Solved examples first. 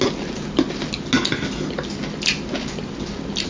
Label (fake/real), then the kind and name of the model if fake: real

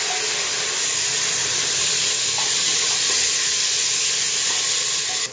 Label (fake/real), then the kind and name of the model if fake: real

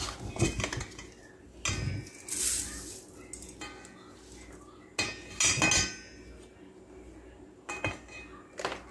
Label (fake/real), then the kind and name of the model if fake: real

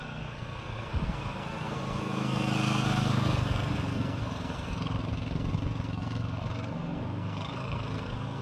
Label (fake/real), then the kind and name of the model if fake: fake, codec, SNAC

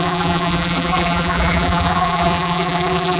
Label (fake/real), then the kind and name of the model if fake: fake, vocoder, BigVGAN v2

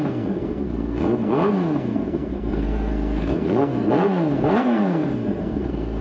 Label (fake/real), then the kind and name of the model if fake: fake, codec, SNAC